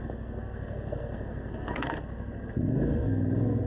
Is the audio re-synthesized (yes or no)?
yes